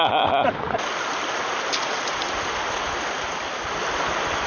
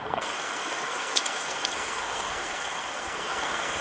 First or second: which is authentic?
first